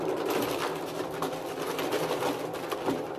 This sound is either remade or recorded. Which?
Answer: recorded